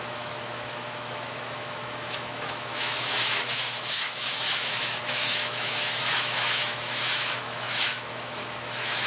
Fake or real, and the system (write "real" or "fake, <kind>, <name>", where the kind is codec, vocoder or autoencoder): fake, autoencoder, DAC-VAE